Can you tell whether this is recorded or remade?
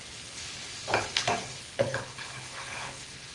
remade